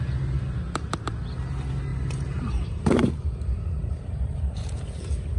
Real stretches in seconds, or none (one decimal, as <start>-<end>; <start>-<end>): 0.0-1.9; 4.7-5.4

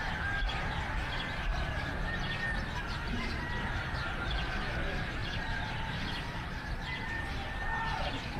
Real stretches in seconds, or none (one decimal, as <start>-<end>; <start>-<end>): 0.0-5.2; 7.2-8.4

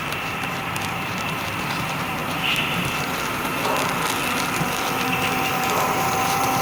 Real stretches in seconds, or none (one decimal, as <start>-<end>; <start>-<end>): 3.5-5.5